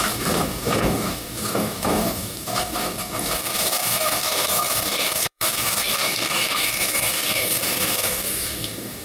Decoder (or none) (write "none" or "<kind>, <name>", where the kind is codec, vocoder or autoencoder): codec, DAC